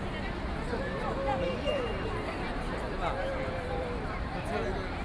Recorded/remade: recorded